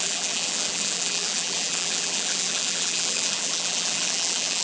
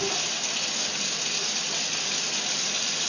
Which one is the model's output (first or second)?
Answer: first